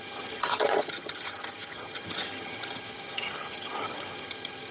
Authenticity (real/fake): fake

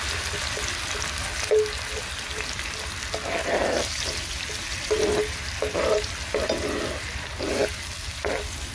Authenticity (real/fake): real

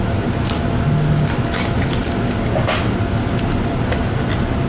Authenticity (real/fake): real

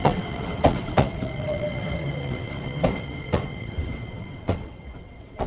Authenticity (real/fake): fake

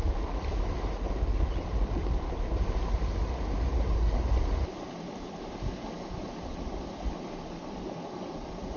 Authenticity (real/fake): real